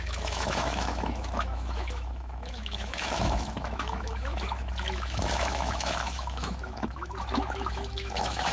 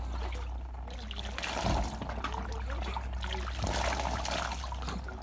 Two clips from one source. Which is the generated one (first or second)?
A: first